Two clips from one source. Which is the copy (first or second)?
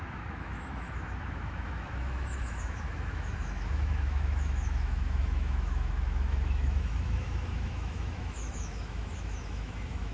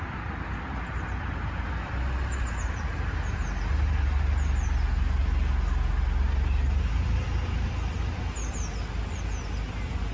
first